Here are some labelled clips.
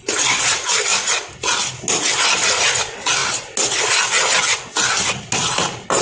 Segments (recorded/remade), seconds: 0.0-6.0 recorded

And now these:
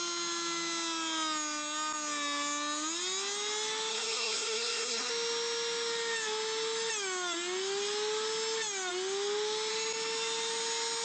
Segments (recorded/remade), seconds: 0.0-3.9 recorded; 3.9-5.1 remade; 5.1-11.0 recorded

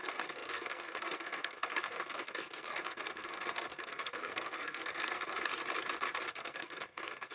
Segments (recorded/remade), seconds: 0.0-5.5 remade; 5.5-6.3 recorded; 6.3-7.3 remade

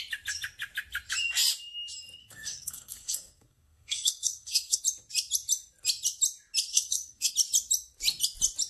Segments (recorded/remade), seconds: 0.0-2.2 recorded; 2.2-4.8 remade; 4.8-6.7 recorded; 6.7-7.3 remade; 7.3-8.7 recorded

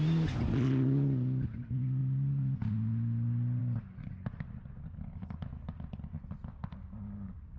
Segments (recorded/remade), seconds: 0.0-7.6 recorded